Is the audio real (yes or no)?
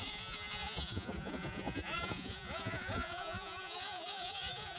no